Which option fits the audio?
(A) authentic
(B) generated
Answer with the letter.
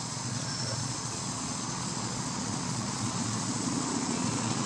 B